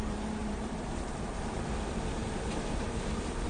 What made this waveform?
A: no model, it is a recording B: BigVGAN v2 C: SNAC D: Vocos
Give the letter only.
B